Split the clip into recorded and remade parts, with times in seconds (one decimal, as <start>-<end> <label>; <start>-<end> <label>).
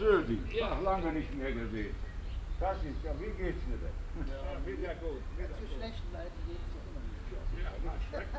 0.0-8.4 recorded